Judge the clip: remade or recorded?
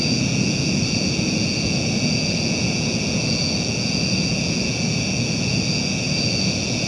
remade